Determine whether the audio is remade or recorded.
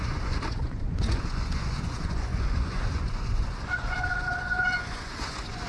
remade